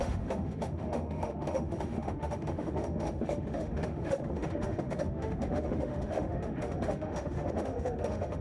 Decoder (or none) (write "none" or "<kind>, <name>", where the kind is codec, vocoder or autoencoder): autoencoder, DAC-VAE